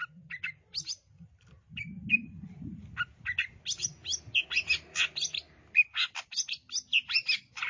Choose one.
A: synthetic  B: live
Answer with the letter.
B